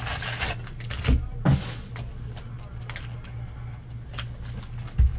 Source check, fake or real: real